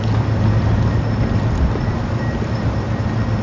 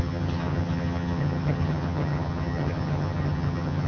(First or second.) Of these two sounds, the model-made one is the second